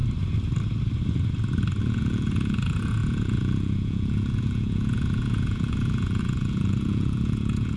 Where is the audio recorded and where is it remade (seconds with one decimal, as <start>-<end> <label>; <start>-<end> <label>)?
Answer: 0.0-1.8 recorded; 1.8-7.8 remade